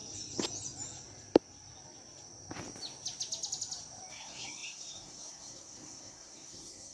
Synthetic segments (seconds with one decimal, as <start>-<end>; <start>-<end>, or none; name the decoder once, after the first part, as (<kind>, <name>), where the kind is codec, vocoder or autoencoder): 4.1-6.9 (codec, SNAC)

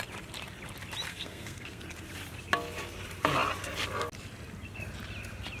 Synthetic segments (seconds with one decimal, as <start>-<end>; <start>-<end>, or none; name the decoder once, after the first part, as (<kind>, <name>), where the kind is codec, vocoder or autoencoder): 1.1-1.8 (codec, SNAC)